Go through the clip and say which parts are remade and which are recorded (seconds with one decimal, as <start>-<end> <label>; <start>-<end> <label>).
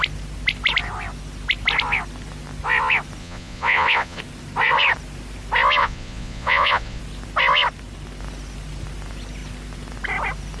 0.0-3.2 recorded; 3.2-4.2 remade; 4.2-5.8 recorded; 5.8-7.0 remade; 7.0-10.6 recorded